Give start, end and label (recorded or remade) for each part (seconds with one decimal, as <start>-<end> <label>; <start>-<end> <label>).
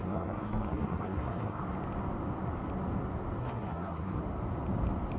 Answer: 0.0-1.6 remade; 1.6-3.4 recorded; 3.4-4.2 remade; 4.2-5.2 recorded